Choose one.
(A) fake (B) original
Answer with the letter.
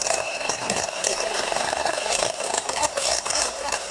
A